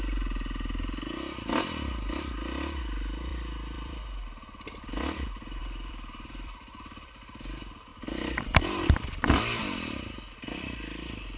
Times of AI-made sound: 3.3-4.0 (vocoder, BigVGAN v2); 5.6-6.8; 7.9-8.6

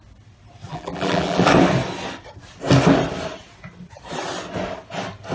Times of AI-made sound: 0.7-1.5 (vocoder, BigVGAN v2)

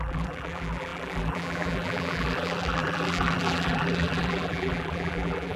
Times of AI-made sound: 0.0-5.6 (vocoder, BigVGAN v2)

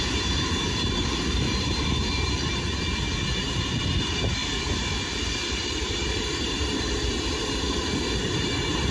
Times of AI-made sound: 0.0-4.4 (vocoder, BigVGAN v2); 5.6-8.9

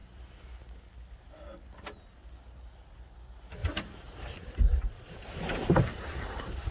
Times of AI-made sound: 3.6-6.7 (vocoder, BigVGAN v2)

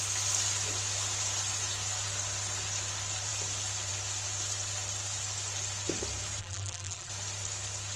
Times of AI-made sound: 6.4-7.1 (vocoder, BigVGAN v2)

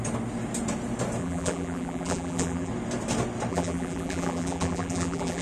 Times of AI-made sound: 1.2-2.7 (vocoder, BigVGAN v2); 3.5-5.4

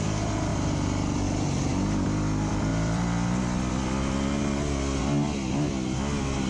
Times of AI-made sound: 2.7-3.7 (vocoder, BigVGAN v2)